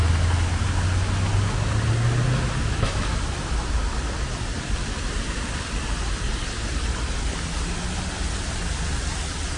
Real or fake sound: real